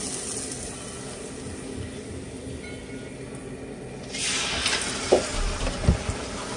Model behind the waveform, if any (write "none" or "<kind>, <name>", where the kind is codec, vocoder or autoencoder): none